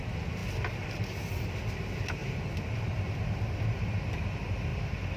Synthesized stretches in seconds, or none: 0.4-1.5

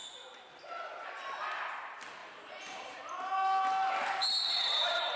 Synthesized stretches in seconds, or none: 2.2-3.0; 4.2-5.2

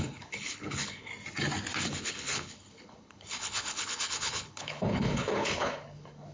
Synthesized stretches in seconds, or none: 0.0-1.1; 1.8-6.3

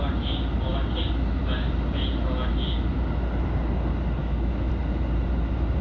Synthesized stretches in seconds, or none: 4.2-4.7